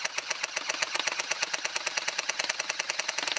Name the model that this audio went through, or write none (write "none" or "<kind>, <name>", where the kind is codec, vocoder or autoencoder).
none